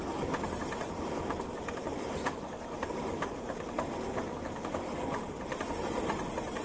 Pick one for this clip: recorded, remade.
remade